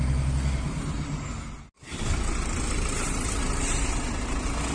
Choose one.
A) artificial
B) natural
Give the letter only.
B